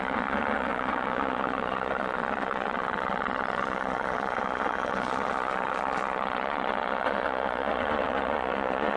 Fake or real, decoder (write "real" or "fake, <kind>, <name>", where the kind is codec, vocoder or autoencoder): fake, vocoder, Vocos